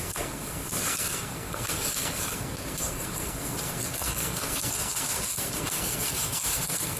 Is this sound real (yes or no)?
no